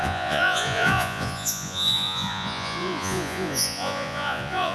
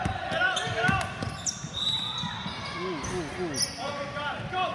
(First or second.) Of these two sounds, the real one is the second